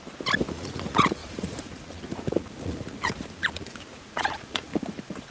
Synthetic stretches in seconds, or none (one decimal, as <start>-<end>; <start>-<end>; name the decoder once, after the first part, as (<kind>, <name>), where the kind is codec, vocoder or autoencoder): 0.5-5.3 (vocoder, Vocos)